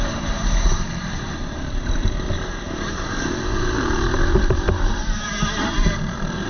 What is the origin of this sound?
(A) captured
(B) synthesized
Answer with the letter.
B